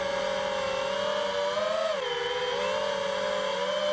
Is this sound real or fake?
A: real